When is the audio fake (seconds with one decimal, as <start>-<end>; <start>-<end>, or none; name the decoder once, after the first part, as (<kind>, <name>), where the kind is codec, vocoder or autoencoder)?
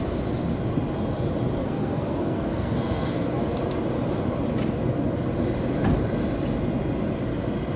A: 1.6-3.4 (codec, SNAC)